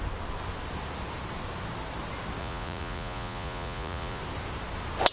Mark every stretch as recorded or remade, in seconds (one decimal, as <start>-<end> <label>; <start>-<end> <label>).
0.0-2.4 recorded; 2.4-4.2 remade; 4.2-5.1 recorded